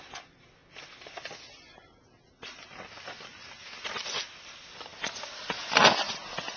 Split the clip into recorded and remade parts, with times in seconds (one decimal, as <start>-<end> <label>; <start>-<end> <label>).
0.0-6.6 recorded